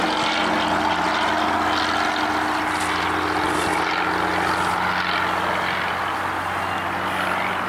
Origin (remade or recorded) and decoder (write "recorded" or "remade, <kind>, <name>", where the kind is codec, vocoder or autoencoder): recorded